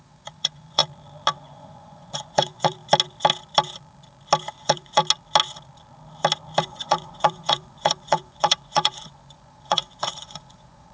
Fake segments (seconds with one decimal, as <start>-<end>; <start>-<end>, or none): 0.0-0.8; 1.4-2.8; 4.5-5.0; 6.6-10.9